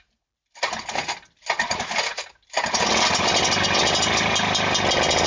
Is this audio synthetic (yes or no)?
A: no